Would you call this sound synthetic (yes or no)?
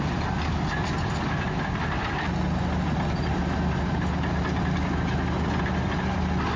no